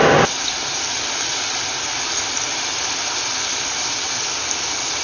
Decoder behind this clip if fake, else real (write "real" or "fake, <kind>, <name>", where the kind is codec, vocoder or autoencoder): real